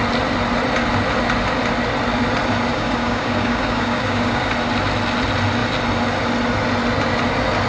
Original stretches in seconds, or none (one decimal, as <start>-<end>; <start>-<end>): 0.0-2.7; 4.5-7.7